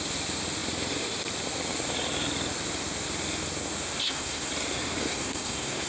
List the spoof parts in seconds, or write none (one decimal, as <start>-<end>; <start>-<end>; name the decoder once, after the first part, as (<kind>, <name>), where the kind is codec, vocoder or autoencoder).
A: 4.0-4.5 (codec, SNAC); 5.0-5.9